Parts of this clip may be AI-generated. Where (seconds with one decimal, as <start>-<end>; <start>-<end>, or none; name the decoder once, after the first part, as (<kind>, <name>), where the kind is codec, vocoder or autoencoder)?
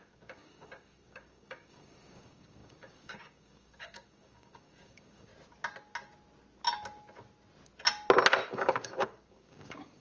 0.0-5.3 (codec, DAC); 8.5-10.0